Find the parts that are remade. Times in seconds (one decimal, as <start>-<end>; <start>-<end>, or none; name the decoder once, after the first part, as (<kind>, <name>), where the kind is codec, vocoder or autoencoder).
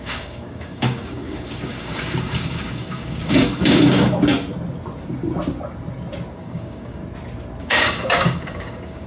0.0-4.1 (codec, DAC); 6.4-7.0; 7.6-9.1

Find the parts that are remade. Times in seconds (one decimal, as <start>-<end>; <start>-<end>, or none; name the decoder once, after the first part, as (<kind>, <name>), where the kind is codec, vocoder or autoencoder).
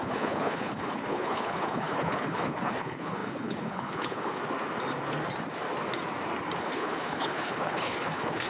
0.0-4.4 (codec, HILCodec); 6.6-8.5